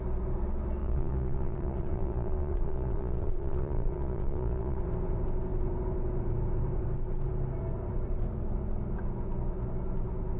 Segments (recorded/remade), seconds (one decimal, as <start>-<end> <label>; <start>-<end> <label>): 0.0-0.8 recorded; 0.8-4.8 remade; 4.8-10.4 recorded